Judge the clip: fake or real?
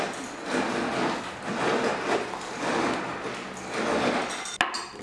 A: real